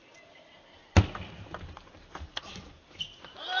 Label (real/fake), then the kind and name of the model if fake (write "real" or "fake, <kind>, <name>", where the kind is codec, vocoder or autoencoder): real